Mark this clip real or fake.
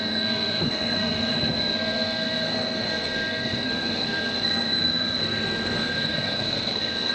fake